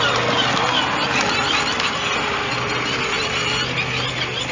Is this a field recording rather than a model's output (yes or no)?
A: yes